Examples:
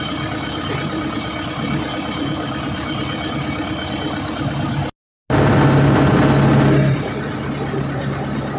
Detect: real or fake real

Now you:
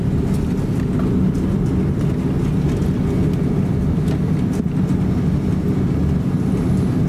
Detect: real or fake real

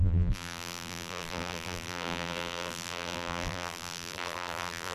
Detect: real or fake fake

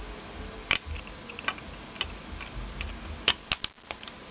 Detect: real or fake real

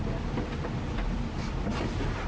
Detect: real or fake fake